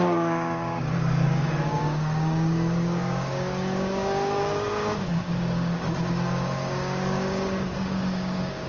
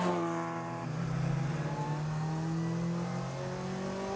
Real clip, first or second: second